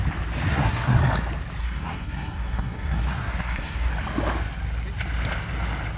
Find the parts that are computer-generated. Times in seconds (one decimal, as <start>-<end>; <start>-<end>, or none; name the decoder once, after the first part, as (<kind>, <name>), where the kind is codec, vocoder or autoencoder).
0.5-1.0 (codec, SNAC); 1.6-3.9